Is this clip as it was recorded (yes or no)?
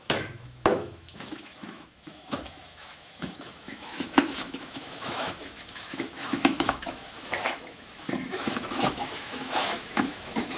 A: no